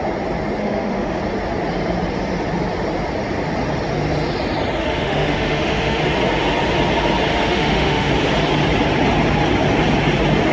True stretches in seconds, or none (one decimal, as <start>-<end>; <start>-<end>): 0.0-0.6; 1.2-4.8; 6.0-7.3; 8.1-10.5